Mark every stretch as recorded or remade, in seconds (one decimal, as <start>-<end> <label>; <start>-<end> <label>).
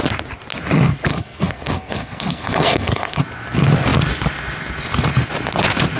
0.0-1.1 recorded; 1.1-3.2 remade; 3.2-6.0 recorded